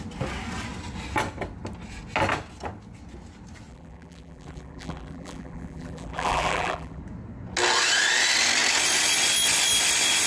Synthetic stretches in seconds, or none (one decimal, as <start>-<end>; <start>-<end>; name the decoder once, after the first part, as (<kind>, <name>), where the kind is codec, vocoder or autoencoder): 3.7-7.0 (vocoder, BigVGAN v2)